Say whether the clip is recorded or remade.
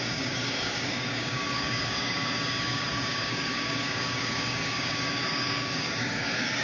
remade